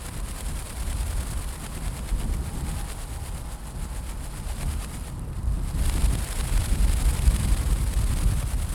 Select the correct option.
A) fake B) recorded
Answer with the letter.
B